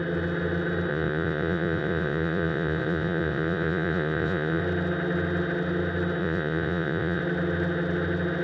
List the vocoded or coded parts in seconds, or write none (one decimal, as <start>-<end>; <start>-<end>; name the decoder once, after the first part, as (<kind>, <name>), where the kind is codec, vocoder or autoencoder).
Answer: 0.9-4.6 (vocoder, Vocos); 6.2-7.2